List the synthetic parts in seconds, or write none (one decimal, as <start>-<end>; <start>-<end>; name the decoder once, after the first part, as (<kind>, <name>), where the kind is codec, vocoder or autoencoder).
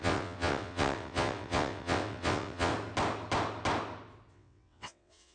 0.0-2.7 (vocoder, WaveNeXt); 4.3-5.3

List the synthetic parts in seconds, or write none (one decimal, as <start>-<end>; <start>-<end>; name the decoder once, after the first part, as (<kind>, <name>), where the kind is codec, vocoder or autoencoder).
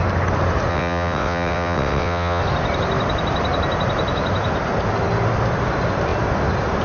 0.7-2.4 (vocoder, WaveNeXt)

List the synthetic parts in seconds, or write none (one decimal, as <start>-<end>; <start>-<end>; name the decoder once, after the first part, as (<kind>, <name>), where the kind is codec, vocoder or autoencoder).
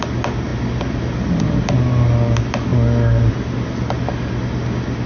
none